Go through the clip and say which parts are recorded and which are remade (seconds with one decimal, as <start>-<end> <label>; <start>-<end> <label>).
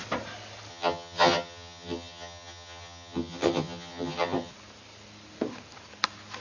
0.0-0.7 recorded; 0.7-4.5 remade; 4.5-6.4 recorded